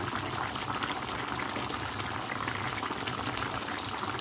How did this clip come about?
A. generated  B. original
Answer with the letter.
B